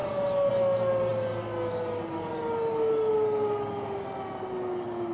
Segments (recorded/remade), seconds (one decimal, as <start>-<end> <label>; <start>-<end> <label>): 0.0-5.1 recorded